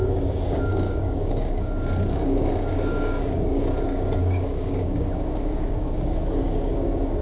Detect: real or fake fake